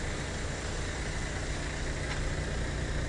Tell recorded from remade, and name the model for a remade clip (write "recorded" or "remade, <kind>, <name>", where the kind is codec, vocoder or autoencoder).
recorded